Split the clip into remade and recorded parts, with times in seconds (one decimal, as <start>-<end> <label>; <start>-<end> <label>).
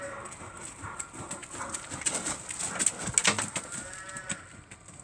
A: 0.0-5.0 recorded